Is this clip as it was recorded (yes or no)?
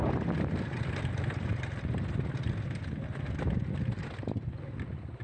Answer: yes